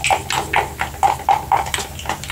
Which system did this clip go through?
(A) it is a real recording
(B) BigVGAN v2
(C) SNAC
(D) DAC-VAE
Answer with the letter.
A